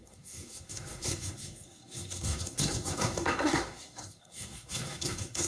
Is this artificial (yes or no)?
yes